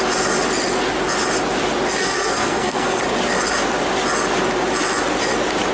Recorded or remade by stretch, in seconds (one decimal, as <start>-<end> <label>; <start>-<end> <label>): 0.0-2.0 recorded; 2.0-3.0 remade; 3.0-5.7 recorded